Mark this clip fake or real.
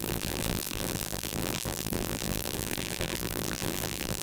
fake